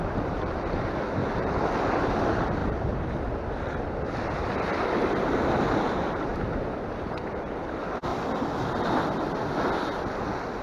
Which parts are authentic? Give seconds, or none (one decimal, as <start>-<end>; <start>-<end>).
0.0-1.2; 1.8-2.6; 3.5-6.3; 7.2-10.6